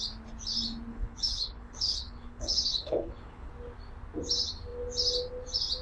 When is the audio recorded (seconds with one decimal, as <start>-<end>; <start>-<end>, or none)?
0.0-0.9; 3.5-5.8